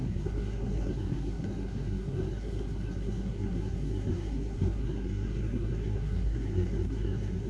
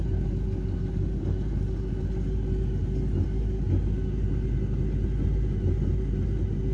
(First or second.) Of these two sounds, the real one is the second